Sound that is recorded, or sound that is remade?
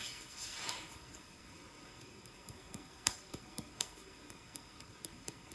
remade